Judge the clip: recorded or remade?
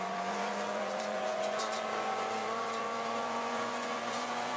remade